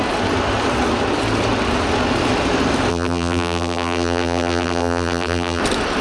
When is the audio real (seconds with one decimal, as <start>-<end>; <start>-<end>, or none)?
0.0-2.9; 5.6-6.0